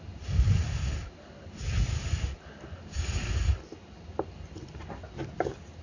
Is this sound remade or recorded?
recorded